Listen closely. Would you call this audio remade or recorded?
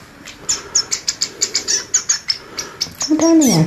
recorded